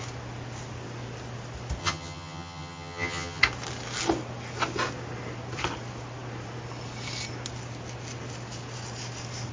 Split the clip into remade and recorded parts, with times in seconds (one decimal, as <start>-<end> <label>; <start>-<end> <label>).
0.0-1.8 recorded; 1.8-3.4 remade; 3.4-9.5 recorded